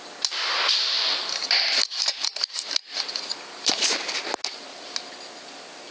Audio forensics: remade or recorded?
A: recorded